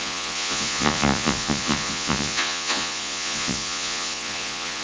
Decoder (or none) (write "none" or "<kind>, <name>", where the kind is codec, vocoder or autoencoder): vocoder, Vocos